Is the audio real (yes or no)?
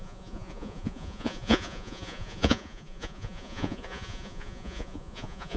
no